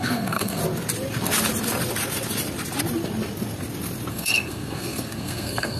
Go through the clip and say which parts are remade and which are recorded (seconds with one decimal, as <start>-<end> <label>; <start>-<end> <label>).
0.0-0.6 remade; 0.6-4.1 recorded; 4.1-5.8 remade

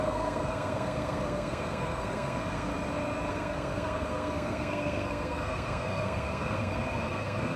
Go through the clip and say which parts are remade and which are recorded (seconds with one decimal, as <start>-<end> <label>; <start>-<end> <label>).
0.0-2.7 remade; 2.7-3.3 recorded; 3.3-7.6 remade

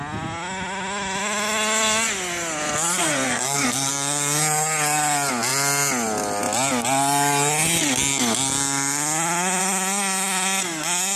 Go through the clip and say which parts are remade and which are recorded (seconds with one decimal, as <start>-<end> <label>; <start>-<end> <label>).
0.0-3.0 recorded; 3.0-3.9 remade; 3.9-11.2 recorded

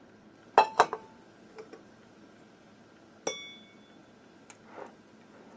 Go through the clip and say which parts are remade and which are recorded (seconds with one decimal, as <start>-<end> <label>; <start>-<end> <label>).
0.0-5.6 recorded

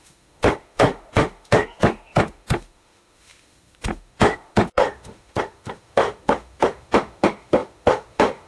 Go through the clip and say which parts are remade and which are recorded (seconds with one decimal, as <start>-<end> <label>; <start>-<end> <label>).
0.0-8.5 remade

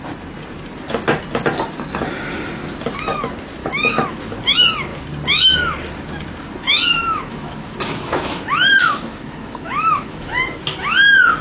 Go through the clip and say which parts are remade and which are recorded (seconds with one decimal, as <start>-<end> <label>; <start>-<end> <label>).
0.0-3.6 recorded; 3.6-4.4 remade; 4.4-6.9 recorded; 6.9-10.3 remade; 10.3-11.4 recorded